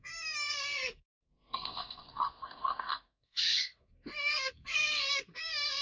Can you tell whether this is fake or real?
fake